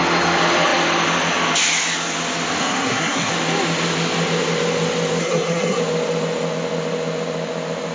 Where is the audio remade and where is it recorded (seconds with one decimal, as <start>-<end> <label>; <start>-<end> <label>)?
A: 0.0-2.6 recorded; 2.6-3.3 remade; 3.3-5.2 recorded; 5.2-5.8 remade; 5.8-7.9 recorded